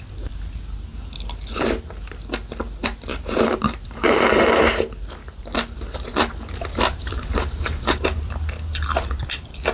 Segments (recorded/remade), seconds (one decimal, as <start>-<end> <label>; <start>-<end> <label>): 0.0-3.1 recorded; 3.1-8.3 remade; 8.3-9.7 recorded